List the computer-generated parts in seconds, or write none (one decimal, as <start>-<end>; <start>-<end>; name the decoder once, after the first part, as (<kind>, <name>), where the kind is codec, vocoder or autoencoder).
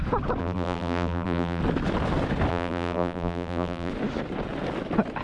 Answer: 0.4-1.6 (vocoder, BigVGAN v2); 2.5-3.9